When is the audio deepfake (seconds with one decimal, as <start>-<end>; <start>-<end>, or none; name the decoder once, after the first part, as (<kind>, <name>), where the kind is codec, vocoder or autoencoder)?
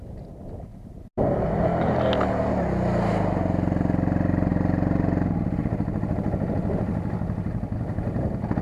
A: none